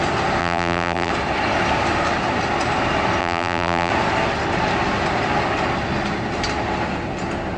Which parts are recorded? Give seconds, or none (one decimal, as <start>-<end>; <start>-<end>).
0.0-0.4; 1.1-3.2; 3.9-7.6